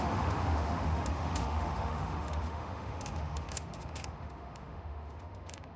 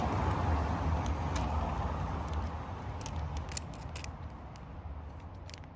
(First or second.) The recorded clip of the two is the second